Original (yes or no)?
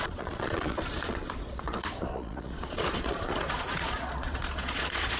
no